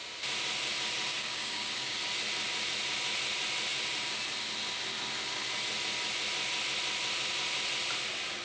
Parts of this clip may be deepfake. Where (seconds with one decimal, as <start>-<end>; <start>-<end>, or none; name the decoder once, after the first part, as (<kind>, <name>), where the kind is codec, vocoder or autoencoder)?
1.1-2.0 (codec, DAC)